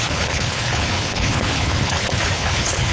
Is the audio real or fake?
fake